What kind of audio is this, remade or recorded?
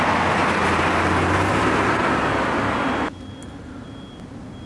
recorded